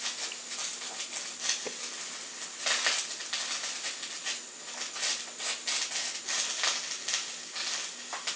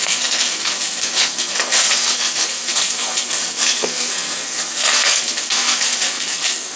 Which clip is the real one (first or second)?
first